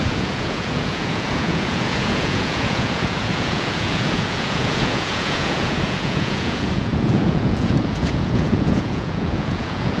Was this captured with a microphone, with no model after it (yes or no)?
no